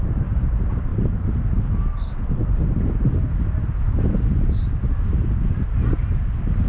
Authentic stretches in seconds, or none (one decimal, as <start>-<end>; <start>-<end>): 0.0-6.7